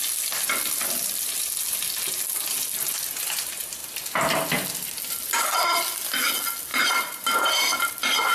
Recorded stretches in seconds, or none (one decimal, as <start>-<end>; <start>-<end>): 0.0-6.7; 7.9-8.3